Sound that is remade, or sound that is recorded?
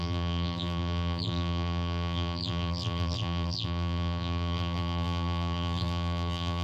remade